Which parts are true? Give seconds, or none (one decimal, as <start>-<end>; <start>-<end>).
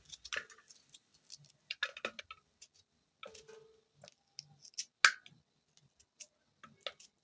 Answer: 0.0-7.2